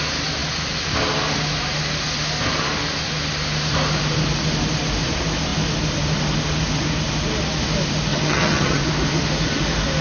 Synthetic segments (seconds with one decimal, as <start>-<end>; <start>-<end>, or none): 8.1-8.8